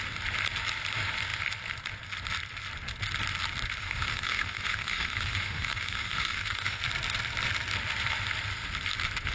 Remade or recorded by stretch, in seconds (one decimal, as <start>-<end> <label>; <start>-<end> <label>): 0.0-3.8 recorded; 3.8-6.8 remade; 6.8-9.3 recorded